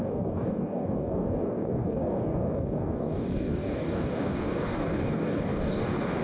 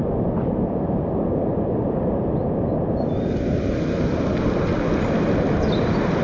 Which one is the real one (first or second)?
second